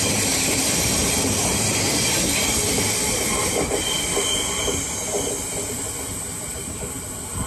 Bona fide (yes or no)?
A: yes